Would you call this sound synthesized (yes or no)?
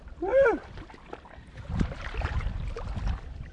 yes